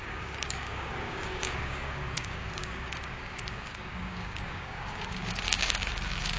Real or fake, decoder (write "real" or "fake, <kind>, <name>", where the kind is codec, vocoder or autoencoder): fake, codec, DAC